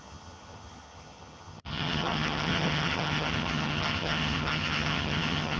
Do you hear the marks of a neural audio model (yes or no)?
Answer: yes